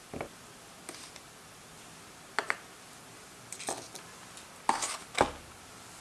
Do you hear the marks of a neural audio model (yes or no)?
no